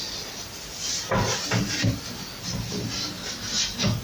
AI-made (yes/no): no